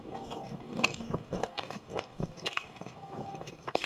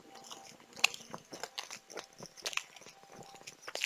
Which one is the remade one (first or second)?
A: first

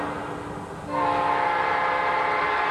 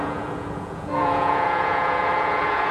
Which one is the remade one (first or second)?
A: second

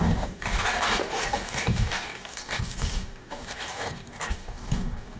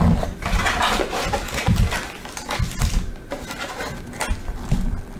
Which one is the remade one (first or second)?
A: first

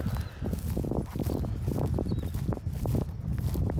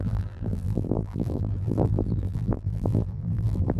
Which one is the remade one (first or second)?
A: second